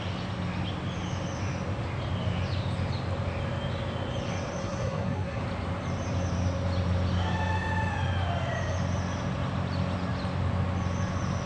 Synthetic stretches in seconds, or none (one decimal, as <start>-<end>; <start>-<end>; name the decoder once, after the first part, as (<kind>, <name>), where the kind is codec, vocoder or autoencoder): 4.6-5.4 (codec, SNAC)